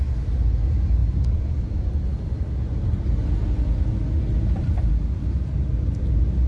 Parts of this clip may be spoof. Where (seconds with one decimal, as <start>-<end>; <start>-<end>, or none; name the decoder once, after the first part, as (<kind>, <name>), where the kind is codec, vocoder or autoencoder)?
none